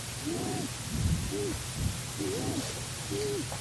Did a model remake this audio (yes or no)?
no